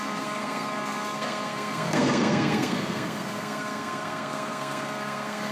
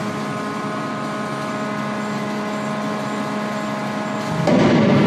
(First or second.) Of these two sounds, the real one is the second